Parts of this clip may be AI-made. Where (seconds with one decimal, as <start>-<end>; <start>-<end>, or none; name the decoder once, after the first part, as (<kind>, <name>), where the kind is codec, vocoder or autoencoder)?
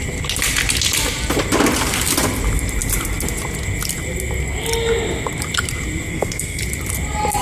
6.1-6.6 (codec, SNAC)